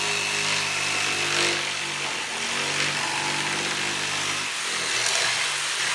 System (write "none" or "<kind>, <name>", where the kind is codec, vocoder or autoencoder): none